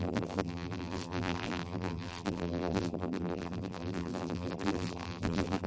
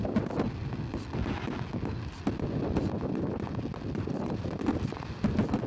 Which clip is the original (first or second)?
second